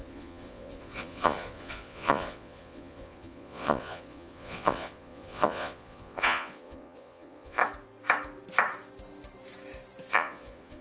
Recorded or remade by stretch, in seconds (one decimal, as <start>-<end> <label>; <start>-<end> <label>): 0.0-7.6 remade; 7.6-10.1 recorded; 10.1-10.8 remade